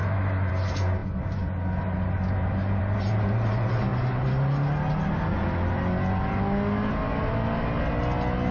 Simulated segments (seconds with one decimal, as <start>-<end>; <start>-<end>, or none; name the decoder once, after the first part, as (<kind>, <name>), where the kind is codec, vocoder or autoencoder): 0.0-0.5 (autoencoder, DAC-VAE)

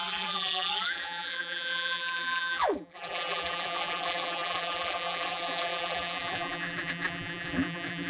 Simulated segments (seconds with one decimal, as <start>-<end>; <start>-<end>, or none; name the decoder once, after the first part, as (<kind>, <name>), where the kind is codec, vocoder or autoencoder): 0.0-8.1 (vocoder, BigVGAN v2)

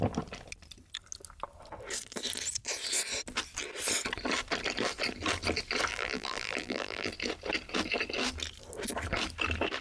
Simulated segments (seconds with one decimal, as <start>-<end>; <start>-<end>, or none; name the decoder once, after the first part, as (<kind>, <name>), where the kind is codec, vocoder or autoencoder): 5.9-7.1 (vocoder, BigVGAN v2)

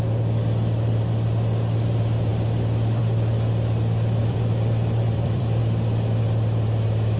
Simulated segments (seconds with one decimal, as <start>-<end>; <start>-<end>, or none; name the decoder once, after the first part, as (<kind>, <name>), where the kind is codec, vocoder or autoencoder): 4.2-5.6 (vocoder, BigVGAN v2)

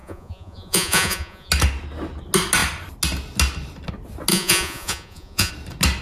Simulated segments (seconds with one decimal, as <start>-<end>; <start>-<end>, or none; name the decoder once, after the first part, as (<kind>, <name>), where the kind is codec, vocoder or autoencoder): 0.0-1.5 (vocoder, Vocos); 4.3-5.5